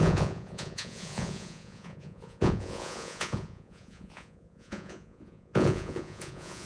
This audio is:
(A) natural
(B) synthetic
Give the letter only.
B